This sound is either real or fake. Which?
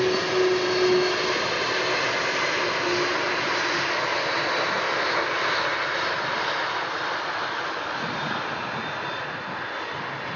real